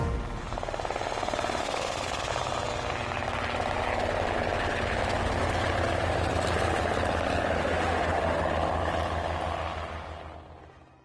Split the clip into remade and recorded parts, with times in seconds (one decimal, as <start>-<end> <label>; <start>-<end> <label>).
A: 0.0-1.6 recorded; 1.6-2.3 remade; 2.3-7.6 recorded; 7.6-8.4 remade; 8.4-11.0 recorded